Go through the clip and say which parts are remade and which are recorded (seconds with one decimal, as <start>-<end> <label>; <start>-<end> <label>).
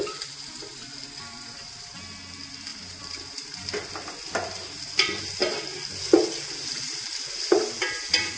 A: 0.0-5.4 remade; 5.4-7.4 recorded; 7.4-8.4 remade